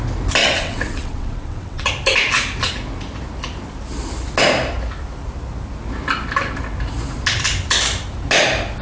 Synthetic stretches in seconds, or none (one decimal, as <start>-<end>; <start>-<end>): 0.4-1.9